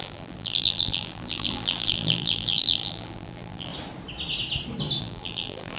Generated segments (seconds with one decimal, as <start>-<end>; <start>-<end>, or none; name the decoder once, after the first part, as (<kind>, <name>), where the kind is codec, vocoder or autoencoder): 0.0-3.7 (vocoder, BigVGAN v2); 5.0-5.8

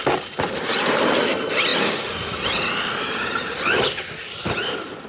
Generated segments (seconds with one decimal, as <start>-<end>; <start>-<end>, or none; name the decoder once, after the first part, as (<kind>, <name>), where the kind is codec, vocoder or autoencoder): none

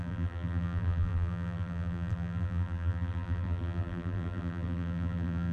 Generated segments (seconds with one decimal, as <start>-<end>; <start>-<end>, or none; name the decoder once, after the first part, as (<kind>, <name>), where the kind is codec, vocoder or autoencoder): 0.0-5.5 (vocoder, BigVGAN v2)

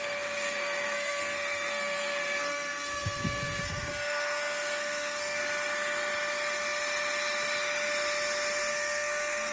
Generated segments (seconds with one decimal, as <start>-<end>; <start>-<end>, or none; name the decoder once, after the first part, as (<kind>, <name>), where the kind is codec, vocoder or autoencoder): 0.0-5.4 (codec, SNAC); 8.7-9.5

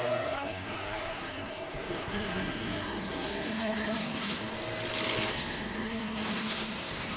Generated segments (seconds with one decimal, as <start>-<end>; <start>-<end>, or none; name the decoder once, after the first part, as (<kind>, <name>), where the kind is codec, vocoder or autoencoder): 0.0-4.4 (codec, SNAC); 5.3-7.2

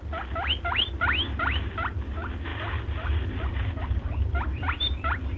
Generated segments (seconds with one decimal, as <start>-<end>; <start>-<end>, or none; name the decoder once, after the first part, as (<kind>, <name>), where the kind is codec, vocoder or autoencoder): 2.5-5.4 (vocoder, BigVGAN v2)

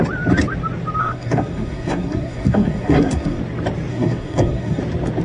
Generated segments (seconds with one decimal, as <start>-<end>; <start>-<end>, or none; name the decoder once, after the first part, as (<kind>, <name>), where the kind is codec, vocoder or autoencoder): 1.0-3.4 (codec, SNAC); 3.9-4.8